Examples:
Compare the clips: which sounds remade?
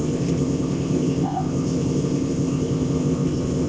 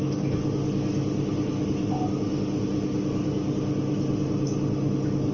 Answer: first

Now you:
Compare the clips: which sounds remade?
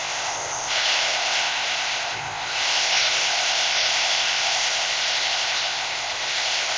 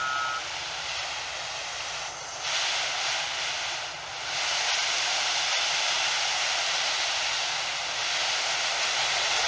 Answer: first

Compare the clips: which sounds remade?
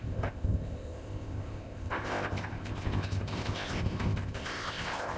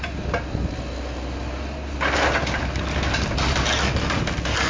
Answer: first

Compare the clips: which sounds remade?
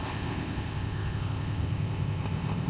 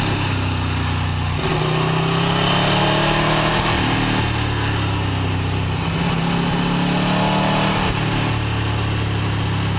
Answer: first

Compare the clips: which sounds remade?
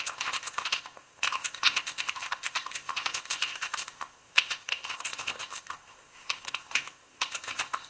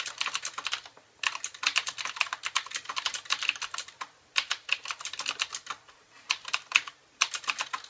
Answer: first